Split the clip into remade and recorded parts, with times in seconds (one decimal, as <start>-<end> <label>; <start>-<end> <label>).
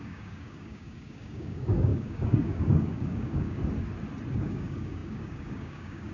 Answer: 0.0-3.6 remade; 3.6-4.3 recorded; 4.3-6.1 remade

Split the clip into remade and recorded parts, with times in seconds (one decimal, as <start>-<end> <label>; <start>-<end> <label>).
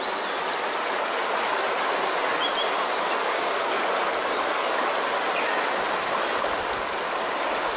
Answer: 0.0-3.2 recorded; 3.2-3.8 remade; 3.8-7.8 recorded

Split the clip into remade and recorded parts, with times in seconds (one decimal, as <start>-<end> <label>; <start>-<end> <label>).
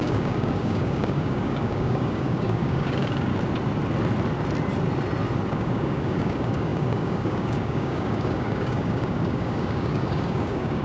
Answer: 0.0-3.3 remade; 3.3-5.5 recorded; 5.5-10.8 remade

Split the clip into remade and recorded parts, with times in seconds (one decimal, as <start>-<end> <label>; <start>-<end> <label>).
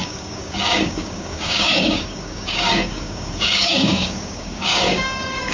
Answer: 0.0-5.5 remade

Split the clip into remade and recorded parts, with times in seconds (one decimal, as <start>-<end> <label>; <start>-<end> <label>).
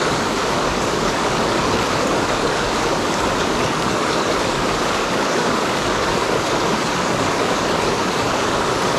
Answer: 0.0-9.0 remade